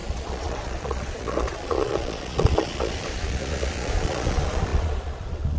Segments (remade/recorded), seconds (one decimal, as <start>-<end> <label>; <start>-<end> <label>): 0.0-5.6 remade